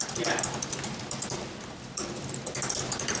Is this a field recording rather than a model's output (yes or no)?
yes